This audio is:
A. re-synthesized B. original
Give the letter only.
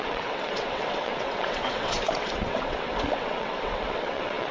A